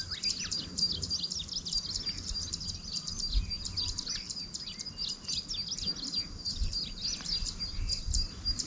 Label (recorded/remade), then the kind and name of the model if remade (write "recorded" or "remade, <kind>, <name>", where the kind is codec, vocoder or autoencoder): recorded